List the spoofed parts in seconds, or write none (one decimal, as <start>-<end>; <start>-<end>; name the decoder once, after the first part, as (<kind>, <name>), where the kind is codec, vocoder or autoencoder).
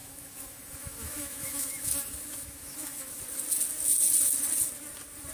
0.0-3.2 (autoencoder, DAC-VAE)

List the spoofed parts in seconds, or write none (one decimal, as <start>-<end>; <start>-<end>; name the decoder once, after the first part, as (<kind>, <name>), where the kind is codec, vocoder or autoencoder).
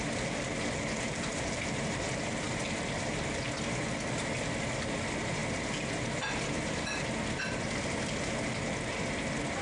5.4-7.4 (vocoder, BigVGAN v2)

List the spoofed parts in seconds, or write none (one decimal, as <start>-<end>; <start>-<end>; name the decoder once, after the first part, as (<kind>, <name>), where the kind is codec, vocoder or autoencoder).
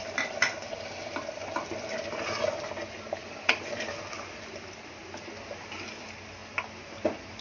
3.2-4.0 (vocoder, BigVGAN v2); 6.4-7.4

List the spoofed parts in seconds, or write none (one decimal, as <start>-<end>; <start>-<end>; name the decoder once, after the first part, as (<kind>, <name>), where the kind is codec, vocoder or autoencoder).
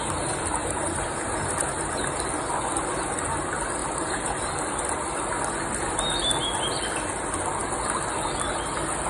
0.6-1.8 (vocoder, BigVGAN v2); 3.8-4.5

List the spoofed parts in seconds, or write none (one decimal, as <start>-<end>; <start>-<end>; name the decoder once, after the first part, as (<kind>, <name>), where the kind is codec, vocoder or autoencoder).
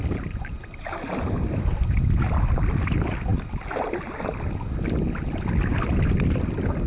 none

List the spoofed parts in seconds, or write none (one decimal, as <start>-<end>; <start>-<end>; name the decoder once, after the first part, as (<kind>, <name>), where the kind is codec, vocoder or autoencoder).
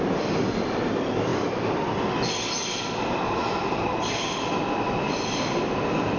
none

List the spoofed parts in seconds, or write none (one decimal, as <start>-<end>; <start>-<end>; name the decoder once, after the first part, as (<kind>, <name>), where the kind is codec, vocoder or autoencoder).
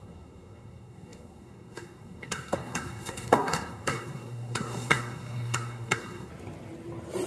0.0-6.3 (codec, SNAC)